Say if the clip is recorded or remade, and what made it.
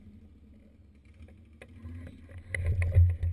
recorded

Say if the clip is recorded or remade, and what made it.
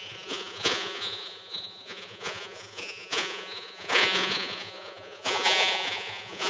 remade, vocoder, Vocos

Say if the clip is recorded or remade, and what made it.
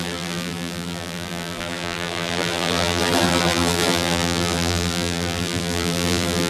remade, vocoder, BigVGAN v2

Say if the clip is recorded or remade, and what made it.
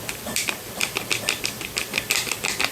remade, vocoder, BigVGAN v2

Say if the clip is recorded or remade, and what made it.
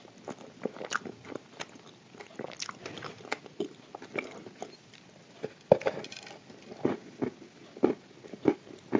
recorded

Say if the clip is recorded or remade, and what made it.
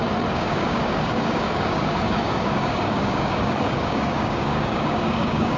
remade, codec, DAC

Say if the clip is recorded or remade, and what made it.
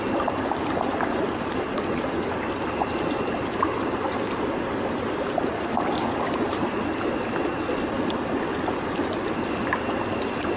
remade, vocoder, BigVGAN v2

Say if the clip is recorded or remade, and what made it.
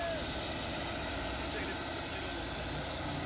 recorded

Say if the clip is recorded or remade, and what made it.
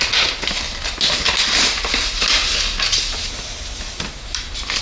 recorded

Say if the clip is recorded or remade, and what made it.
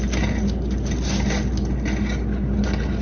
recorded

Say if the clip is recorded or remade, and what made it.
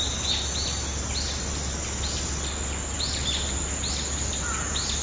recorded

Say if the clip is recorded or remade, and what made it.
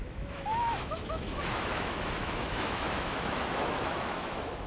remade, autoencoder, DAC-VAE